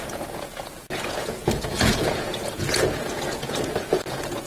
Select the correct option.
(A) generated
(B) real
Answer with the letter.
A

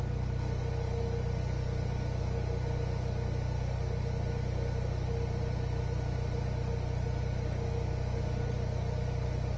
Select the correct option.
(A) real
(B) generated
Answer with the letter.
A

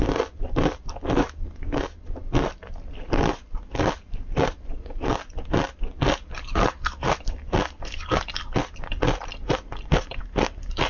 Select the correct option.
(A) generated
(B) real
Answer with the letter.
B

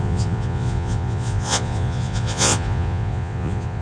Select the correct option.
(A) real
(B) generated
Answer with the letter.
B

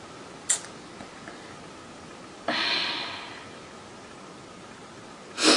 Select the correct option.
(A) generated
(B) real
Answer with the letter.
B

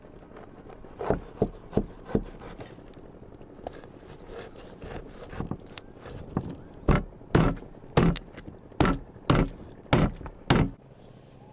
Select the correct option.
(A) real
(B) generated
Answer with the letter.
A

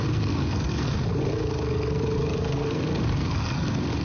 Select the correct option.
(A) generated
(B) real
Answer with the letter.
A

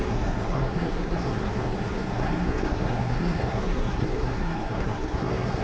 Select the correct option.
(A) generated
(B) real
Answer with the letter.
A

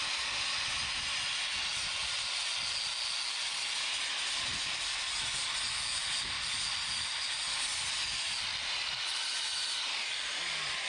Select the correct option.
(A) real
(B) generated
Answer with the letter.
A